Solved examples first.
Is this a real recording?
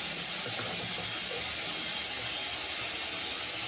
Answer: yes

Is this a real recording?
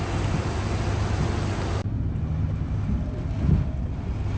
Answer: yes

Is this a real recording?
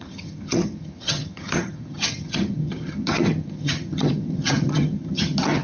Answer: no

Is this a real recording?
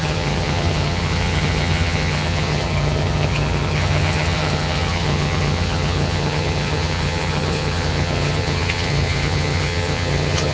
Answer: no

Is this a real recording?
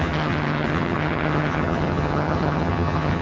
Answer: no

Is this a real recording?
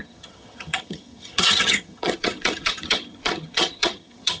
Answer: no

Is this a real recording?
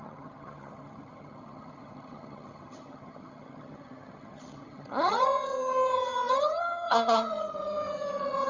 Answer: no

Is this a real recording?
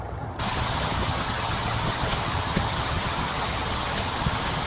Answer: no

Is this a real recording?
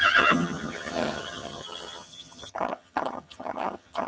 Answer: no